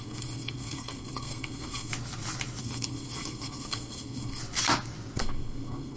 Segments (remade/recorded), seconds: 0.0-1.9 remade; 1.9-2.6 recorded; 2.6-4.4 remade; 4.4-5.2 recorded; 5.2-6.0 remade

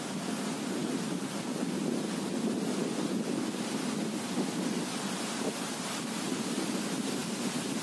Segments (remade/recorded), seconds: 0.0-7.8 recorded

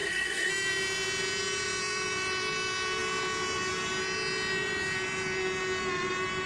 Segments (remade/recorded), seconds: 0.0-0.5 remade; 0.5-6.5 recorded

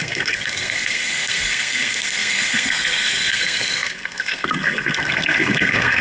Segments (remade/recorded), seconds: 0.0-6.0 remade